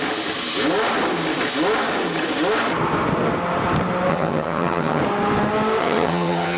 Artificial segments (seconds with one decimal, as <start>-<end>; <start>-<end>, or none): 4.1-5.0; 5.8-6.6